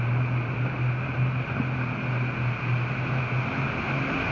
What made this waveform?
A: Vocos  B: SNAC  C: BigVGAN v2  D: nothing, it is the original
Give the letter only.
D